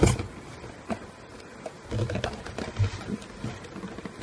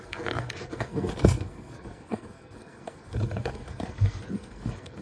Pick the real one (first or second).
first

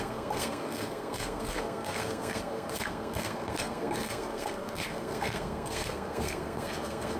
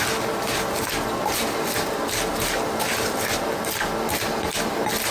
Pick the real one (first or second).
second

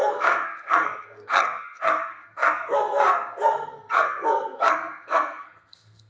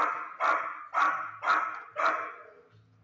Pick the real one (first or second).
second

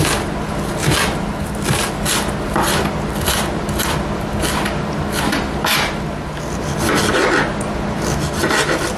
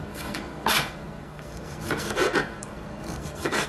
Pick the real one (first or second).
first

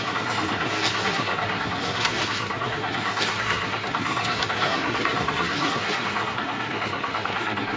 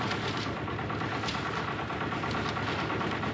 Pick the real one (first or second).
second